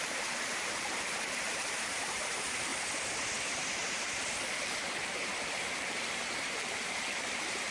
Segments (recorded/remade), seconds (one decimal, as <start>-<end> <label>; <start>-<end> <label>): 0.0-2.7 remade; 2.7-3.7 recorded; 3.7-7.7 remade